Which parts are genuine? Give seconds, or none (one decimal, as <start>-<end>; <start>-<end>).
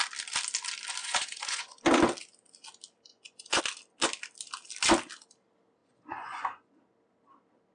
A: 0.0-1.0; 1.8-3.1; 3.6-5.8; 6.8-7.7